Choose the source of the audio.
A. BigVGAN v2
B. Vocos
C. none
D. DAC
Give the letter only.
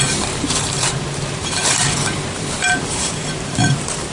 A